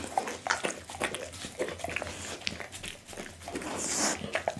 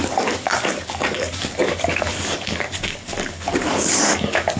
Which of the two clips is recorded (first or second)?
first